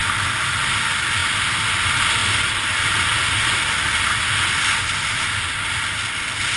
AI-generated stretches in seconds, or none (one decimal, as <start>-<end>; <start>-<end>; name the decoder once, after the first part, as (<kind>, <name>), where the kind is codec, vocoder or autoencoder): 2.2-2.8 (vocoder, BigVGAN v2)